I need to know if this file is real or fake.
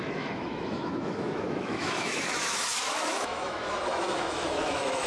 fake